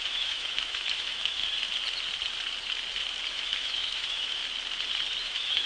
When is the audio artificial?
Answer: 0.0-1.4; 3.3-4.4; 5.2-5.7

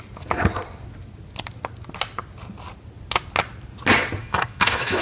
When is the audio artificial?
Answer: 4.2-5.0

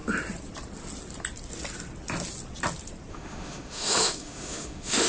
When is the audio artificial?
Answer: 3.1-5.1